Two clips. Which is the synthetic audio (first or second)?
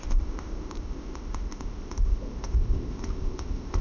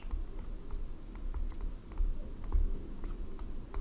first